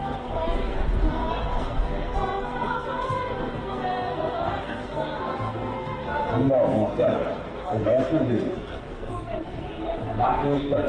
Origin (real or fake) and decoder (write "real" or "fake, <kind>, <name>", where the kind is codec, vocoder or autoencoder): fake, codec, SNAC